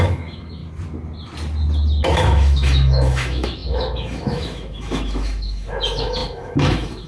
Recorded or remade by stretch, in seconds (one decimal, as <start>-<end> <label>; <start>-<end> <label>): 0.0-0.6 remade; 0.6-2.1 recorded; 2.1-7.1 remade

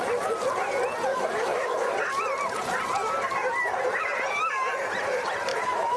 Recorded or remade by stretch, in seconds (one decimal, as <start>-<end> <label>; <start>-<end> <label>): 0.0-1.1 recorded; 1.1-1.9 remade; 1.9-5.5 recorded; 5.5-6.0 remade

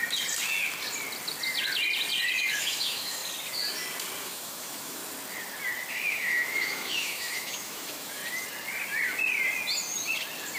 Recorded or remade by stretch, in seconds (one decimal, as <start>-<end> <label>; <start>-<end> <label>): 0.0-2.4 recorded; 2.4-3.2 remade; 3.2-4.2 recorded; 4.2-5.0 remade; 5.0-5.9 recorded; 5.9-8.2 remade; 8.2-10.6 recorded

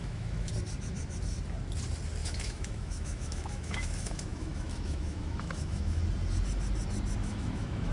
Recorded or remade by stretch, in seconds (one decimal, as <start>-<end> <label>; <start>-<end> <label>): 0.0-0.5 remade; 0.5-2.2 recorded; 2.2-6.0 remade; 6.0-7.2 recorded; 7.2-7.9 remade

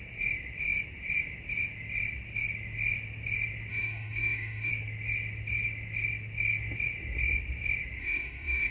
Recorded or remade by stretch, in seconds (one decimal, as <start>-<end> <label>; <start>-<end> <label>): 0.0-3.7 recorded; 3.7-4.7 remade; 4.7-8.0 recorded; 8.0-8.7 remade

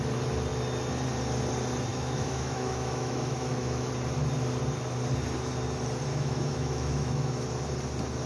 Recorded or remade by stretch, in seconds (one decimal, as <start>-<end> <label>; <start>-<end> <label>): 0.0-1.9 recorded; 1.9-3.9 remade; 3.9-6.1 recorded; 6.1-7.5 remade; 7.5-8.3 recorded

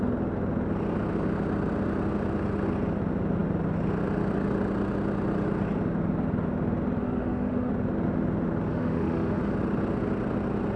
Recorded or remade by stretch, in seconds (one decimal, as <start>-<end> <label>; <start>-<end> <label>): 0.0-7.0 recorded; 7.0-7.7 remade; 7.7-8.7 recorded; 8.7-9.4 remade; 9.4-10.8 recorded